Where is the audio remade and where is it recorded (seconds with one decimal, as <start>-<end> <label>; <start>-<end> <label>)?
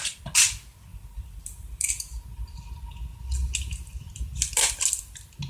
0.0-0.9 recorded; 0.9-1.9 remade; 1.9-5.5 recorded